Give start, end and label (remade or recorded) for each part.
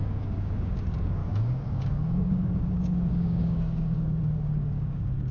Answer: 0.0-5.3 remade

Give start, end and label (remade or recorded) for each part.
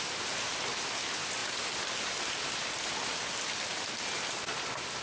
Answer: 0.0-5.0 recorded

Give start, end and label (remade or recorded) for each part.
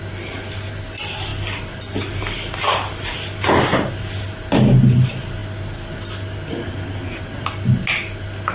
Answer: 0.0-8.5 recorded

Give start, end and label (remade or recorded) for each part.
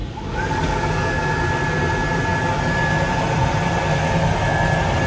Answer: 0.0-1.4 remade; 1.4-5.1 recorded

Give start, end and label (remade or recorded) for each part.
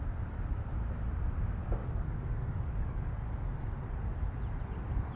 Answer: 0.0-1.8 recorded; 1.8-3.1 remade; 3.1-5.2 recorded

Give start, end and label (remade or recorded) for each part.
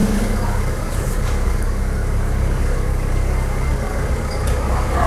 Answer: 0.0-5.1 remade